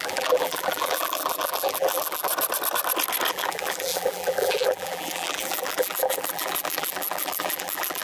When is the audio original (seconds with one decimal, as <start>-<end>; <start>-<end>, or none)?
2.3-3.3